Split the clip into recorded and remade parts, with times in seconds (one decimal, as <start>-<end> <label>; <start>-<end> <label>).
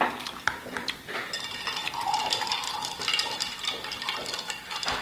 0.0-5.0 recorded